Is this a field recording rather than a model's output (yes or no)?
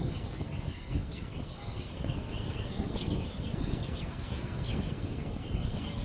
no